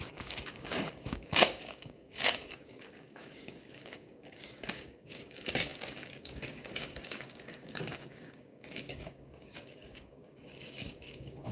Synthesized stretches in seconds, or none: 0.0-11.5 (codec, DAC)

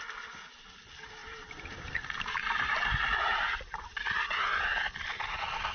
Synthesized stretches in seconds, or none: 1.2-1.9 (vocoder, BigVGAN v2)

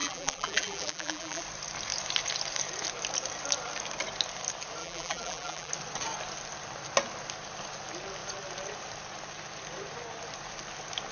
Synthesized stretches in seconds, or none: 0.0-1.4 (vocoder, BigVGAN v2); 4.8-5.7

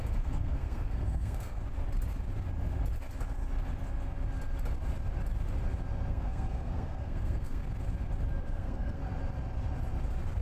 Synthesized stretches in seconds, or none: 0.0-1.6 (codec, SNAC); 6.1-7.6; 8.4-9.0

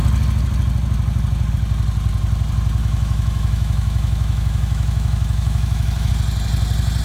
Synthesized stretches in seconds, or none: 2.8-6.1 (autoencoder, DAC-VAE)